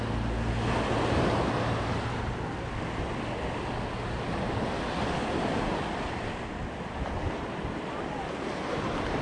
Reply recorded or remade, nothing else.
recorded